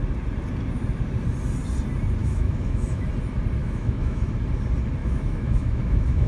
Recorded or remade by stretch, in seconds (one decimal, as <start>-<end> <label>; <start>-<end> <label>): 0.0-2.2 recorded; 2.2-3.1 remade; 3.1-3.6 recorded; 3.6-4.3 remade; 4.3-5.0 recorded; 5.0-6.3 remade